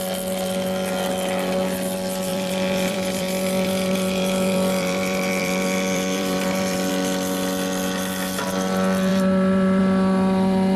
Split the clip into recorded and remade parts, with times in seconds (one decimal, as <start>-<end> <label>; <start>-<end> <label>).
0.0-2.3 recorded; 2.3-6.9 remade; 6.9-9.1 recorded; 9.1-9.8 remade; 9.8-10.8 recorded